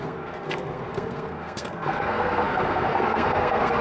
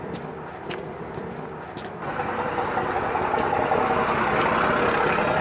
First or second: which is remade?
first